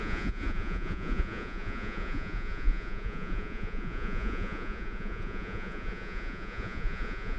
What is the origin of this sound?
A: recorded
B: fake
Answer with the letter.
B